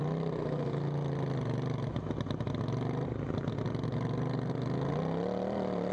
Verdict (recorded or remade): recorded